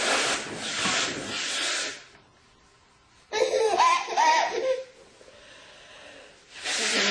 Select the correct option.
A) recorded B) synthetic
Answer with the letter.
A